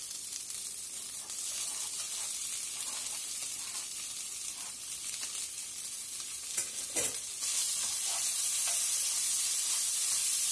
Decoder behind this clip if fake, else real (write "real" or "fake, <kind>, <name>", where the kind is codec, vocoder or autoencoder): real